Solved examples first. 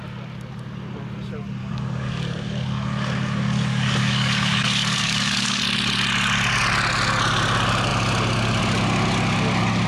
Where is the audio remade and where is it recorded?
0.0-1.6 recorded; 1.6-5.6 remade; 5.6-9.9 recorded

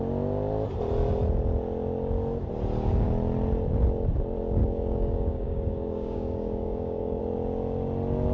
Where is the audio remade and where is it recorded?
0.0-4.6 recorded; 4.6-7.2 remade; 7.2-8.3 recorded